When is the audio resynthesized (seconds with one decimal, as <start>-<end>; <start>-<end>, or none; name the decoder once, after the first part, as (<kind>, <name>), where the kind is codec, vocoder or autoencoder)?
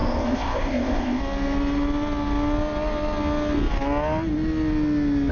0.0-1.2 (codec, ZipCodec)